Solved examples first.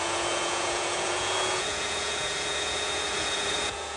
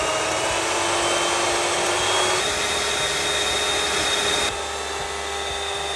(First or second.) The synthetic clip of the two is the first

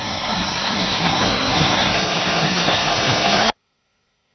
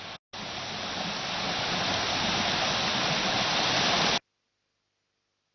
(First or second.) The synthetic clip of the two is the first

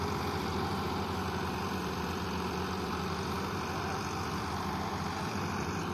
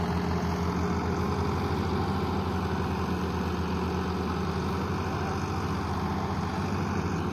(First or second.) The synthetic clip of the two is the first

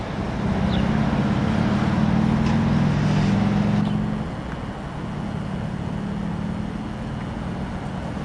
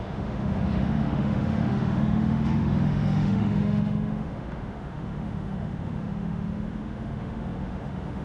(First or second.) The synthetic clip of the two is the second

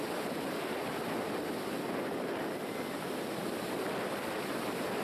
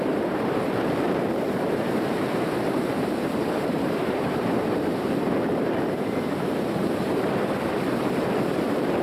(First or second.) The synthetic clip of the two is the second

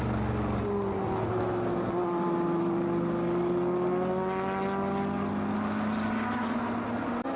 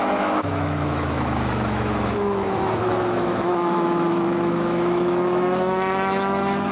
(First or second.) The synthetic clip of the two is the second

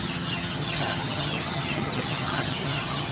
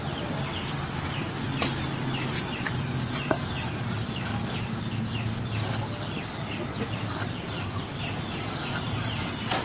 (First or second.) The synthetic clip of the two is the first